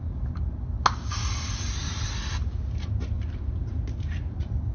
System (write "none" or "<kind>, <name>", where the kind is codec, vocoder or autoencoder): none